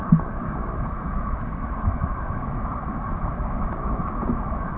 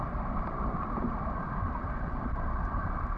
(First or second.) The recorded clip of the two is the second